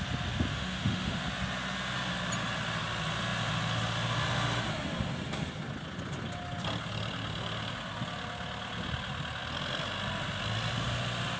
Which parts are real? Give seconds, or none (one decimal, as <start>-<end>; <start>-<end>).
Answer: 0.0-0.5; 1.2-11.4